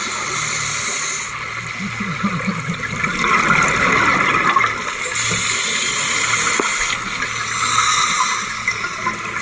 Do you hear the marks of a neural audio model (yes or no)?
no